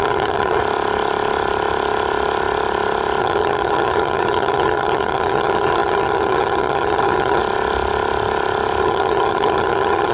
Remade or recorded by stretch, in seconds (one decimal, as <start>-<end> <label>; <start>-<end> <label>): 0.0-0.6 remade; 0.6-3.2 recorded; 3.2-7.4 remade; 7.4-8.8 recorded; 8.8-10.1 remade